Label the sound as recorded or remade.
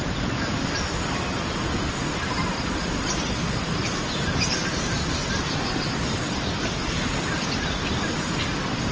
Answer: recorded